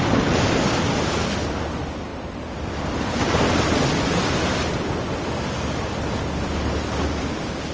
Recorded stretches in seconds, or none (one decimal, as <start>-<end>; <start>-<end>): 0.0-7.7